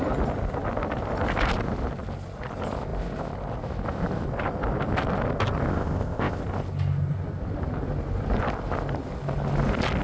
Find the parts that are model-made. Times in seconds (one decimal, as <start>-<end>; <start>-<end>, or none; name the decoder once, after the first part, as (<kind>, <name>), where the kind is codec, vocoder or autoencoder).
5.7-6.4 (codec, ZipCodec)